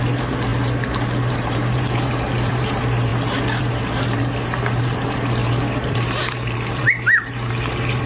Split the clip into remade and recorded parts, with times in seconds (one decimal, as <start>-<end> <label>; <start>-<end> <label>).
0.0-3.1 remade; 3.1-3.6 recorded; 3.6-8.1 remade